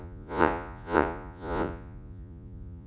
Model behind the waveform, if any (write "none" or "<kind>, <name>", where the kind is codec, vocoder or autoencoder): vocoder, Vocos